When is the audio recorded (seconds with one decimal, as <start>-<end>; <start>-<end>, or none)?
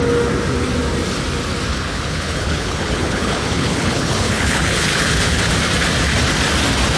0.0-1.7; 5.5-7.0